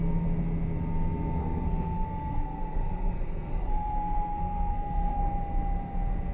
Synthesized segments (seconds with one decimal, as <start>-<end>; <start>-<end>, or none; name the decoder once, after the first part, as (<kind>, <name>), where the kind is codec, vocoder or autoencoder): 1.4-5.2 (codec, SNAC)